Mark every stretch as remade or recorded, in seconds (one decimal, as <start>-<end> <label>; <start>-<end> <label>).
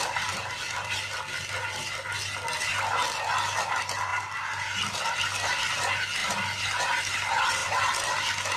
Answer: 0.0-8.6 recorded